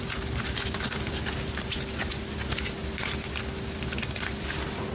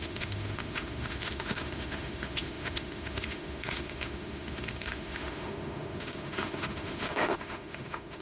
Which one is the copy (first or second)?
second